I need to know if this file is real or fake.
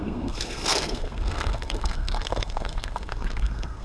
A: fake